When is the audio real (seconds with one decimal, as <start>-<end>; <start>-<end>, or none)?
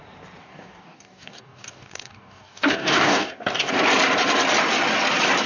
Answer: 0.0-0.4; 3.7-5.5